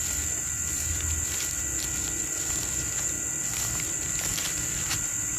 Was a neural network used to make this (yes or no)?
yes